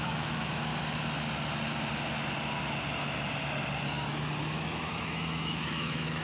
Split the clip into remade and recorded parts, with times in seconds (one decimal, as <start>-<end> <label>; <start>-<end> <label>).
0.0-0.7 remade; 0.7-4.4 recorded; 4.4-6.2 remade